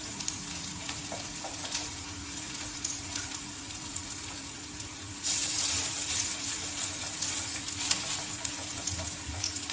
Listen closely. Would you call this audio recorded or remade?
remade